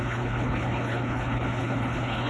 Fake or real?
fake